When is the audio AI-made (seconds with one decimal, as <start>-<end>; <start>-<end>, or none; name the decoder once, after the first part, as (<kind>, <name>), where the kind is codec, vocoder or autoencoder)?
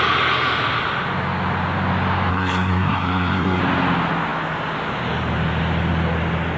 2.3-3.6 (codec, SNAC)